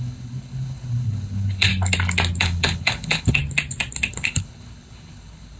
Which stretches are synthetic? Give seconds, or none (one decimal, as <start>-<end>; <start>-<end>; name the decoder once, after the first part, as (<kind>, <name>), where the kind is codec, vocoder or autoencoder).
0.0-1.7 (codec, HILCodec); 2.4-3.4; 4.1-5.6